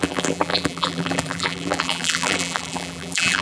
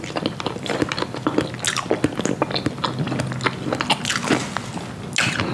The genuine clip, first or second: second